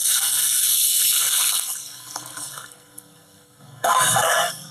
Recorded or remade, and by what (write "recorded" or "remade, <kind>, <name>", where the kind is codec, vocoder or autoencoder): remade, codec, SNAC